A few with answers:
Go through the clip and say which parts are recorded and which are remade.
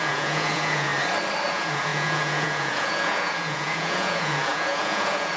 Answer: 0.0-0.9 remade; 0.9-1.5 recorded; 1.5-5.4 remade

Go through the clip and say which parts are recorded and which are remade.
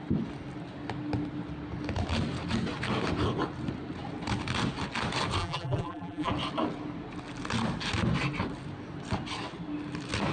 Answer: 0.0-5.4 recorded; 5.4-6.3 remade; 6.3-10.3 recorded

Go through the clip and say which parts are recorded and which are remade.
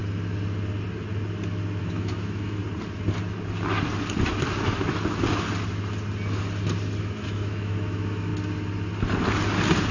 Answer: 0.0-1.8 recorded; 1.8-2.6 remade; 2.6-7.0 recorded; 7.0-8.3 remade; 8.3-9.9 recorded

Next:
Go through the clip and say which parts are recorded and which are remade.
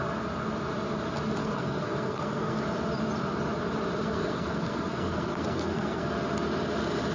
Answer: 0.0-1.4 recorded; 1.4-2.6 remade; 2.6-4.0 recorded; 4.0-6.1 remade; 6.1-7.1 recorded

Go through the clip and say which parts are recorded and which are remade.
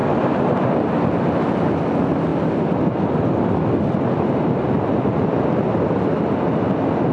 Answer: 0.0-1.1 remade; 1.1-7.1 recorded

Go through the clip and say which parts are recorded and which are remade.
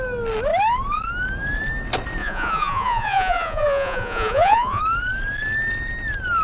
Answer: 0.0-2.2 recorded; 2.2-4.8 remade; 4.8-6.4 recorded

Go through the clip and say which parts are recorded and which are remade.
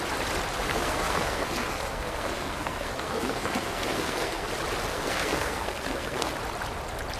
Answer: 0.0-0.7 recorded; 0.7-4.5 remade; 4.5-4.9 recorded; 4.9-6.3 remade; 6.3-7.2 recorded